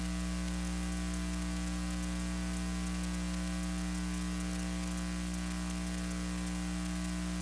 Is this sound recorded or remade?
recorded